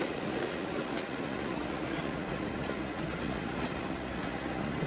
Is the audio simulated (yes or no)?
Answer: yes